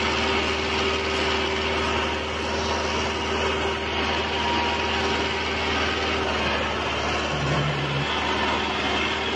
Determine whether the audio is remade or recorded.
recorded